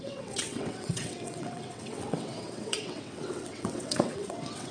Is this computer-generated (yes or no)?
yes